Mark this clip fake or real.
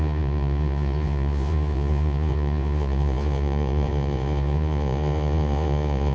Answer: fake